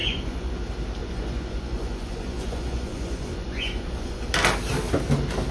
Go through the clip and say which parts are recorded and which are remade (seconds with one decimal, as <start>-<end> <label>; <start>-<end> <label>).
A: 0.0-0.5 remade; 0.5-1.0 recorded; 1.0-4.3 remade; 4.3-5.5 recorded